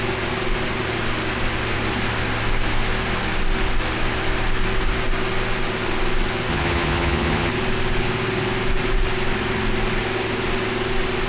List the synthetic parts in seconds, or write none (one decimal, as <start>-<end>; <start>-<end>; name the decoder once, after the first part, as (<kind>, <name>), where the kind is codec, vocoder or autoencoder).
6.5-7.5 (vocoder, HiFi-GAN)